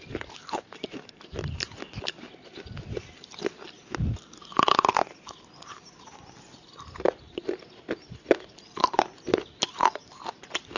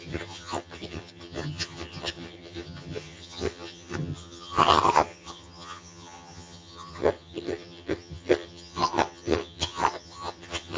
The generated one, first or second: second